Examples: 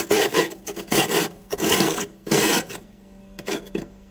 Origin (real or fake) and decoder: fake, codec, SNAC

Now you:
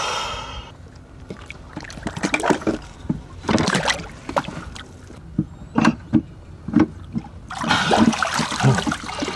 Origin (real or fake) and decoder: real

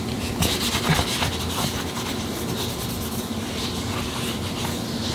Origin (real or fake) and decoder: real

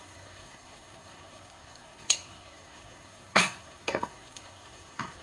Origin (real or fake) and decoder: fake, codec, SNAC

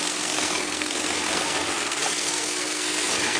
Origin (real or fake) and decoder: fake, codec, SNAC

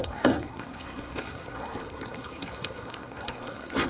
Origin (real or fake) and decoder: fake, codec, SNAC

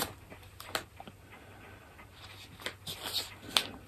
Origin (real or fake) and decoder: real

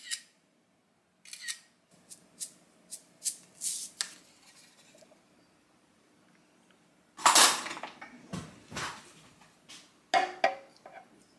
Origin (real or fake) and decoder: real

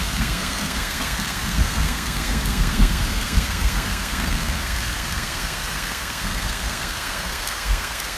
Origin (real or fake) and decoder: fake, codec, SNAC